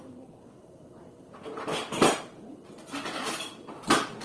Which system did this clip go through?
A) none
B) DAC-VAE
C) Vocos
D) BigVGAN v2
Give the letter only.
A